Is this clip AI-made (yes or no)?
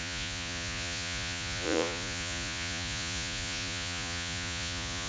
yes